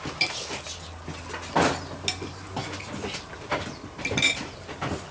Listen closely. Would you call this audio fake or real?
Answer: real